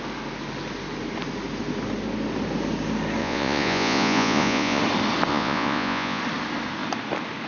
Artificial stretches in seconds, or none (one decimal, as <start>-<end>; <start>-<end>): 3.2-4.8; 5.3-6.2